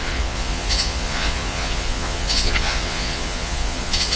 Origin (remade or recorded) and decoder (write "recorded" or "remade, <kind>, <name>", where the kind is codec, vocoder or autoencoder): remade, vocoder, Vocos